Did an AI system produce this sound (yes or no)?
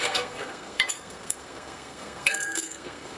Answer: yes